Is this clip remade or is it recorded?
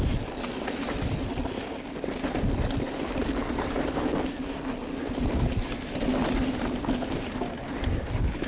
recorded